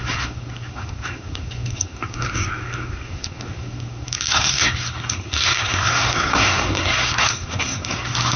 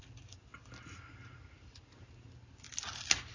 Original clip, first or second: second